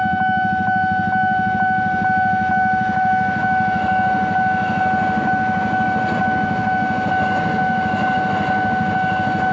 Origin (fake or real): real